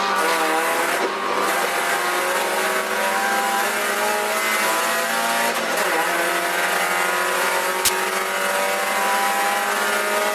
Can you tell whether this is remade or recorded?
recorded